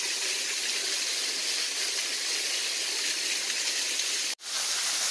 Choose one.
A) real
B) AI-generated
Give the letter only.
A